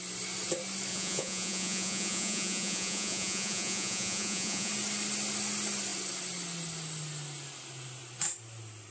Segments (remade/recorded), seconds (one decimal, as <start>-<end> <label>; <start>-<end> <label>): 0.0-0.9 recorded; 0.9-4.7 remade; 4.7-8.9 recorded